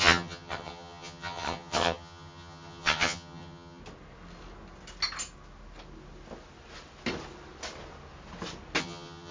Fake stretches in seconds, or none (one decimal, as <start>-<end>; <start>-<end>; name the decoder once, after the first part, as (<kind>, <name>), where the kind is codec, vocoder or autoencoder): 0.0-3.8 (vocoder, HiFi-GAN); 8.8-9.3